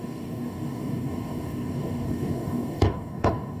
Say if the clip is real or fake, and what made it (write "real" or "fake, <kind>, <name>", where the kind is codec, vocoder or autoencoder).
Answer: fake, codec, DAC